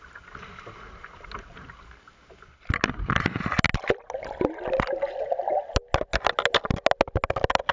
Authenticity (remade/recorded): recorded